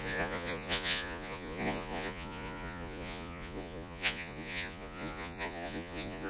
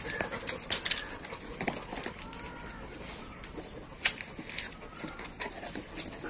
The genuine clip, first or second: second